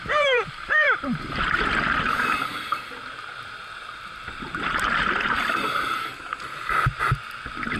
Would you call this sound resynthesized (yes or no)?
yes